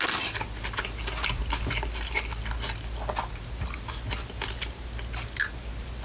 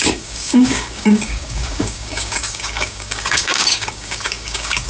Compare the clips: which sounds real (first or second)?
first